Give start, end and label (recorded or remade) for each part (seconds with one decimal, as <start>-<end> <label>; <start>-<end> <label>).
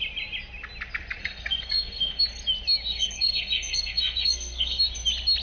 0.0-1.2 recorded; 1.2-2.2 remade; 2.2-2.9 recorded; 2.9-4.8 remade; 4.8-5.4 recorded